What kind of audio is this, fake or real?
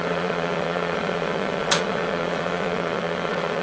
fake